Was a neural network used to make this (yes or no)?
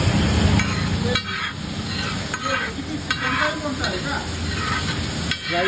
no